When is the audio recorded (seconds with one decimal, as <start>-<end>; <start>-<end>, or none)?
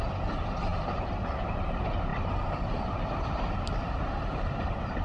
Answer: 0.0-2.1